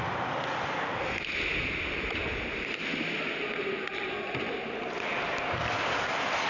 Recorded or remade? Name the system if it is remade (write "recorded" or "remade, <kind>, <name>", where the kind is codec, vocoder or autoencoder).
recorded